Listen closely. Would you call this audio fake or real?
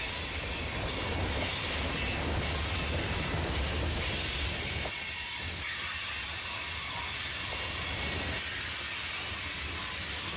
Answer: real